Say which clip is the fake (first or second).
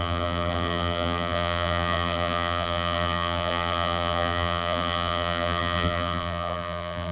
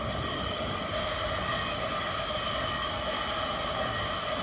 first